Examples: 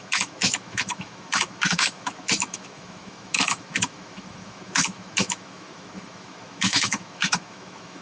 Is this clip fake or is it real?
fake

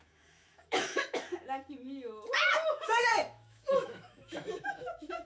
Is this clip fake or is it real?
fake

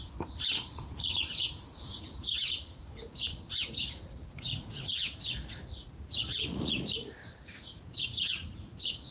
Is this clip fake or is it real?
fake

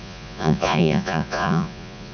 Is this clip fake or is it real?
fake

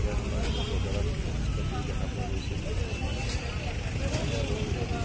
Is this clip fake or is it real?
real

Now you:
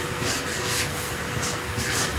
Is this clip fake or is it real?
fake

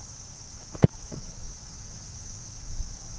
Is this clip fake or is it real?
fake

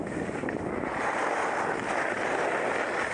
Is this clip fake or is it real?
real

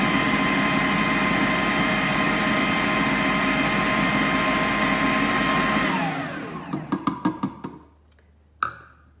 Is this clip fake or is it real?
real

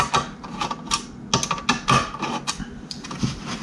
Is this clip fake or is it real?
real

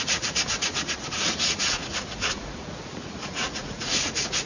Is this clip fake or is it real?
fake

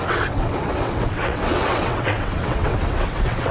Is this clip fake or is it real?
fake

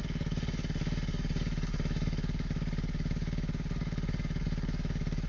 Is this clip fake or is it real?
fake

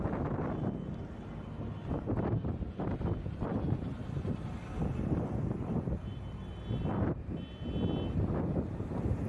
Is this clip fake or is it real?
real